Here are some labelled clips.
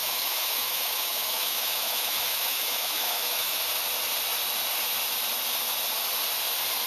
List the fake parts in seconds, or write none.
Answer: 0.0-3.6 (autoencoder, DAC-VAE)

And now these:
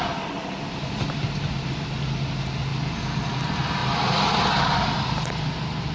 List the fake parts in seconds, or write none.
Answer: none

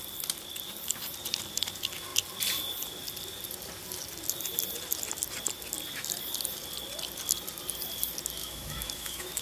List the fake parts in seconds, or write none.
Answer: 8.4-9.4 (autoencoder, DAC-VAE)

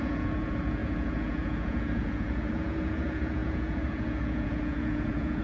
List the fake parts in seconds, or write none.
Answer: 0.0-5.4 (vocoder, Vocos)

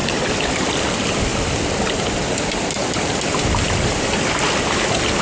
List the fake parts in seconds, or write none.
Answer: 0.0-0.5 (vocoder, BigVGAN v2); 2.8-3.9

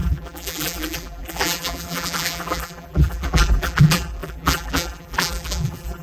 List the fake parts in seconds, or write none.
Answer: 0.0-6.0 (vocoder, BigVGAN v2)

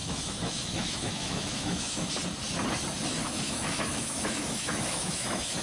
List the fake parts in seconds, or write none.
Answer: 0.0-2.1 (autoencoder, DAC-VAE); 3.2-5.6

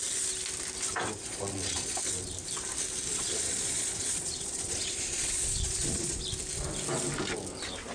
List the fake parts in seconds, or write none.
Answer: 1.2-2.0 (vocoder, Vocos); 3.1-6.2